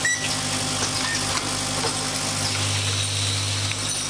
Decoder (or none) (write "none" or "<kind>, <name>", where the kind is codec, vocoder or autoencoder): none